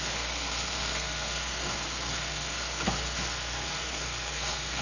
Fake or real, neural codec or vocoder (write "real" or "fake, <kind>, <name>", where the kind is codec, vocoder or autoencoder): fake, codec, SNAC